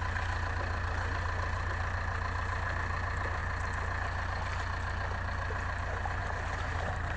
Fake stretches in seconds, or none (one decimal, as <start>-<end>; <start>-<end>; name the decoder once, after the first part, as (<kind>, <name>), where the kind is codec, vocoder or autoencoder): 0.0-3.4 (vocoder, BigVGAN v2); 6.2-7.2